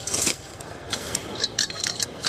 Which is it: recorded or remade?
remade